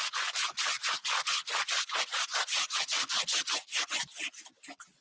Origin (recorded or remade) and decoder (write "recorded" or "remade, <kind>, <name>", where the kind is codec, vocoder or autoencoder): recorded